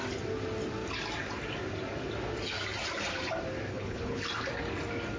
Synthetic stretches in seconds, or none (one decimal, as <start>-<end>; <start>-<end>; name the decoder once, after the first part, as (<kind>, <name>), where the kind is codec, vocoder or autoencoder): 3.7-4.2 (codec, HILCodec)